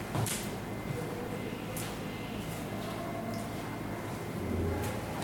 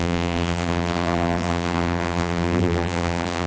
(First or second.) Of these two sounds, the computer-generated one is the second